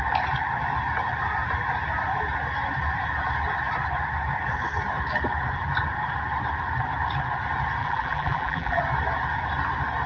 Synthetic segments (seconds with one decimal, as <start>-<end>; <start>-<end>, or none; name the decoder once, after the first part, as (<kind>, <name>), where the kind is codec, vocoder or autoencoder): 7.8-8.8 (vocoder, BigVGAN v2)